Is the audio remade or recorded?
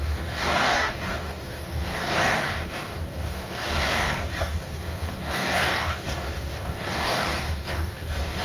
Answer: remade